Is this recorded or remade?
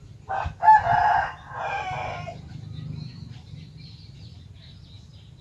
recorded